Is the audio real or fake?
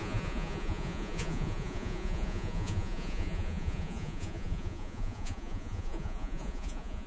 fake